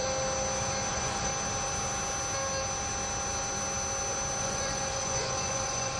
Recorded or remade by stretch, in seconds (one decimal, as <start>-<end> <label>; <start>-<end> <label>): 0.0-0.9 recorded; 0.9-1.3 remade; 1.3-4.4 recorded; 4.4-6.0 remade